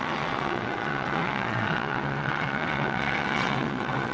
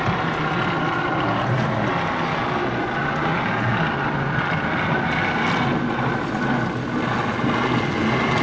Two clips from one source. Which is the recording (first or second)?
second